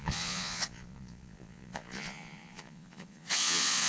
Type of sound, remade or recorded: remade